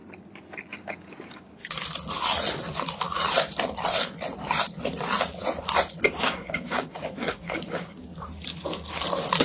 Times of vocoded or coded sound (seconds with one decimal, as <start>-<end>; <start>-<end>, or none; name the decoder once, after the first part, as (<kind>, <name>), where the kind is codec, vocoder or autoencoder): 0.7-1.6 (codec, DAC); 6.1-8.1